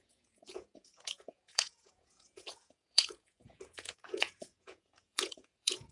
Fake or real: fake